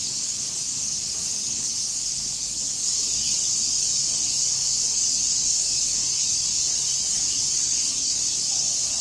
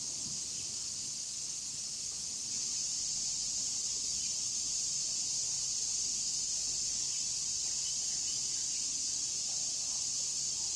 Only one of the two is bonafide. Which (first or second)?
second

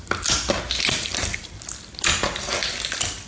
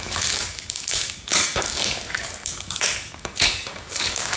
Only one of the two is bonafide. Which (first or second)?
first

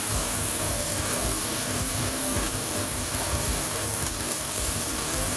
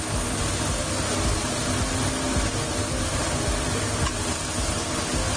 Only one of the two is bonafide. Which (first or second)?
second